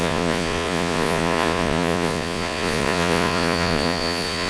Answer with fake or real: fake